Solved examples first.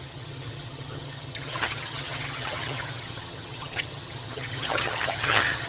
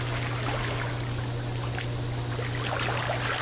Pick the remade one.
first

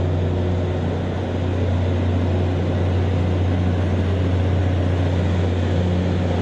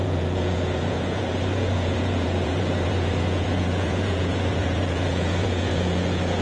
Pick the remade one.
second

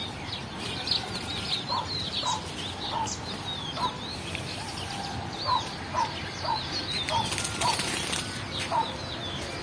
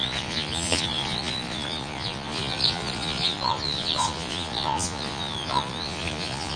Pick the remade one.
second